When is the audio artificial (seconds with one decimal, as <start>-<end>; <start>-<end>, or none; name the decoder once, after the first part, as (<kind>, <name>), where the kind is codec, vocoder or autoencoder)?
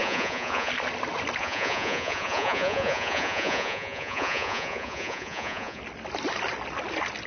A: 0.0-0.7 (vocoder, Vocos); 1.4-5.8